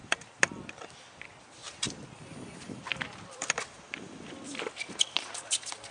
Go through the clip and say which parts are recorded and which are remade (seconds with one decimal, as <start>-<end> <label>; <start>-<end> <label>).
0.0-5.9 remade